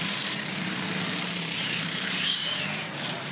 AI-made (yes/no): yes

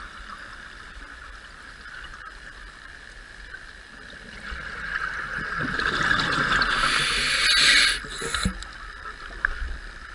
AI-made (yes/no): no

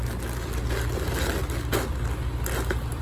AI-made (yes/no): no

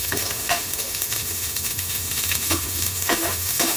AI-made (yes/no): yes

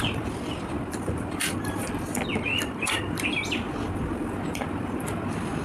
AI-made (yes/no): yes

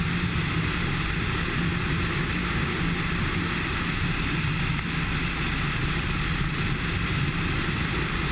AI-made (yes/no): no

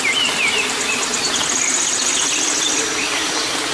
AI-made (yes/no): no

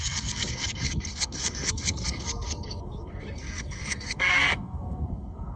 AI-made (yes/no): yes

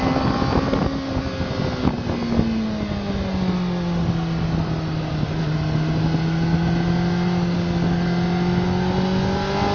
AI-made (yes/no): no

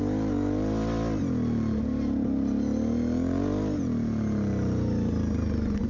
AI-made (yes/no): no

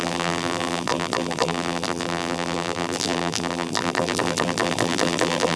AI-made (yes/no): yes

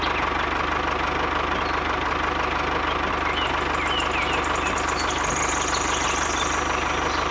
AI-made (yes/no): no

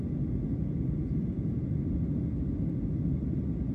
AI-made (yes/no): no